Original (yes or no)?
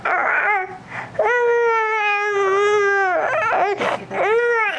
yes